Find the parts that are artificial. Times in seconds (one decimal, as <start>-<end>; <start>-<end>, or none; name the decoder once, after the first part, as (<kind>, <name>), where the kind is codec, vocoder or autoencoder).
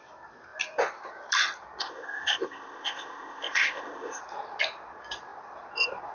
1.8-4.2 (codec, ZipCodec)